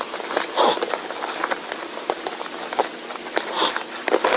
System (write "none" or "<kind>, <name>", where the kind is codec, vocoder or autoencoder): none